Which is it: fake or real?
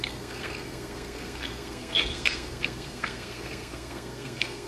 fake